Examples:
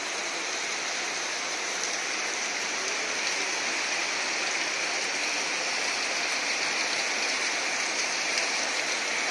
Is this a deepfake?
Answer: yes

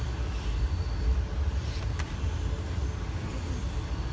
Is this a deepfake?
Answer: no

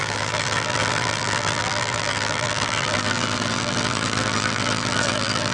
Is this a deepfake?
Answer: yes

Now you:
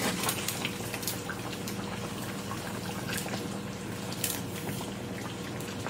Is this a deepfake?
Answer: no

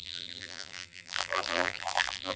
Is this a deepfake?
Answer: yes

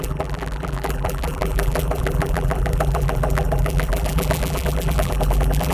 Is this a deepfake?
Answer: yes